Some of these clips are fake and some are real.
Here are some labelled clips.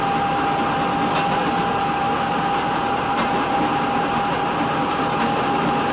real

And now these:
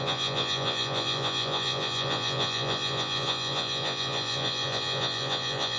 fake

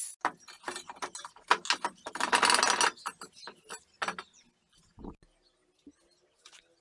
real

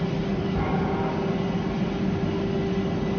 real